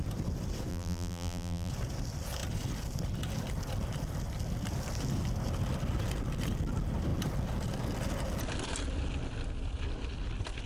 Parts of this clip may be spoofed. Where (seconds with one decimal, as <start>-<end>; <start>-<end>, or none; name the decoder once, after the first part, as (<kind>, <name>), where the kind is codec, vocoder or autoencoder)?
0.7-1.7 (vocoder, BigVGAN v2)